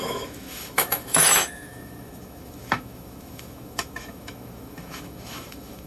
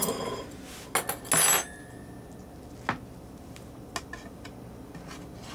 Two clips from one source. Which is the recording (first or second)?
second